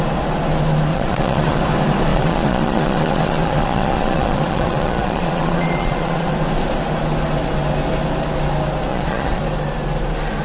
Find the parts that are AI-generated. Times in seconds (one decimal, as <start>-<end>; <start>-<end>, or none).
0.9-1.6; 2.1-6.3; 8.9-9.4